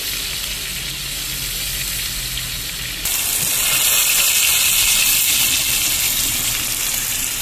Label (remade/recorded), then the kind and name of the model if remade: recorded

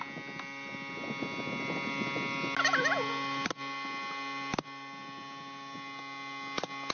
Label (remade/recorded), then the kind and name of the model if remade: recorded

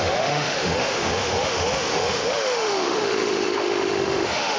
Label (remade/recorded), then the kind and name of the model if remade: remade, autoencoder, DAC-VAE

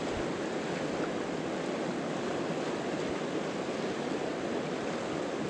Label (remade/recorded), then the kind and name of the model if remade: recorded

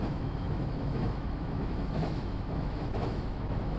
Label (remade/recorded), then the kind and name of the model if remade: remade, autoencoder, DAC-VAE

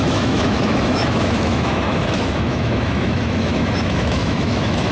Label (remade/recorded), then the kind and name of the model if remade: remade, autoencoder, DAC-VAE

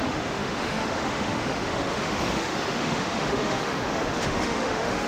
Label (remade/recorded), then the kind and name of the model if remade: remade, autoencoder, DAC-VAE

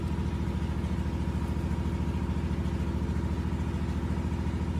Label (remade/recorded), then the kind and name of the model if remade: recorded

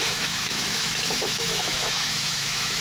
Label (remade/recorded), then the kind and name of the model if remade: remade, autoencoder, DAC-VAE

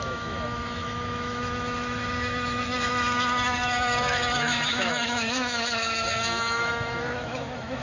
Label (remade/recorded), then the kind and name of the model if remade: remade, autoencoder, DAC-VAE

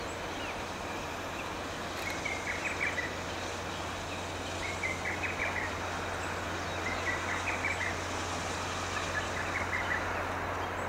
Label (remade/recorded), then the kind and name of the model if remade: recorded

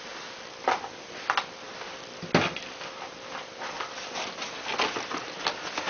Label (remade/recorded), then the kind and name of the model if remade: recorded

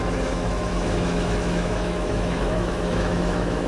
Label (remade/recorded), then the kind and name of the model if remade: remade, autoencoder, DAC-VAE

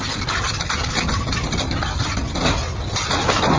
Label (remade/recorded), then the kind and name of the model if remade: recorded